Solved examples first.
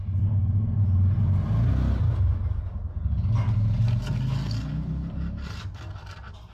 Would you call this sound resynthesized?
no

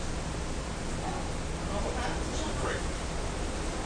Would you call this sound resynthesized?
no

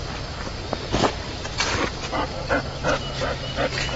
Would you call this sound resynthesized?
no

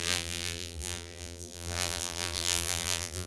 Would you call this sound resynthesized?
yes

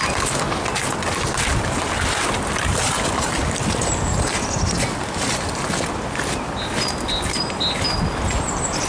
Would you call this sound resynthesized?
no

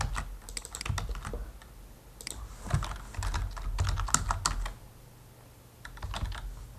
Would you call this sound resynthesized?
no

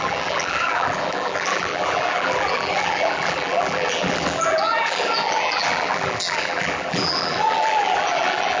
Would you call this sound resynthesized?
yes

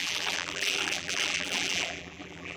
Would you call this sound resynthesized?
yes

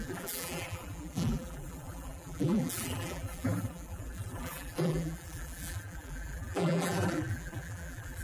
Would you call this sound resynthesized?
yes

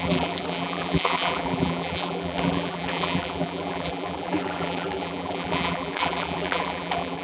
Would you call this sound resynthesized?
yes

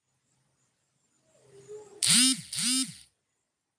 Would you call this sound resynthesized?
no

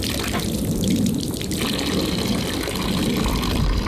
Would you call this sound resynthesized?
no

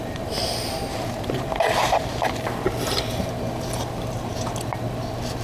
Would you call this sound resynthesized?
no